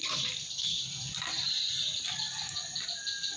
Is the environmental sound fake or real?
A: fake